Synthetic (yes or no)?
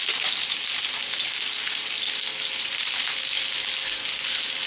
no